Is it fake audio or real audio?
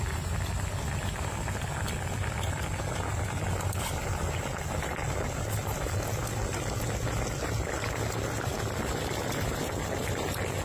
real